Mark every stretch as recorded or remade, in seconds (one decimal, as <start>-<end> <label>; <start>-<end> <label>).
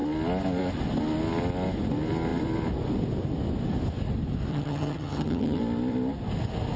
0.0-4.5 recorded; 4.5-5.6 remade; 5.6-6.8 recorded